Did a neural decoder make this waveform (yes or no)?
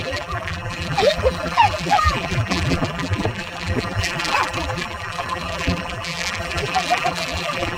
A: yes